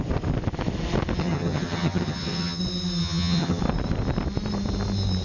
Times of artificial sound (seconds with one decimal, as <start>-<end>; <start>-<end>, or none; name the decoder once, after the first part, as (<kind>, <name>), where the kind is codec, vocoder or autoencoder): 1.2-2.6 (vocoder, HiFi-GAN); 3.0-3.6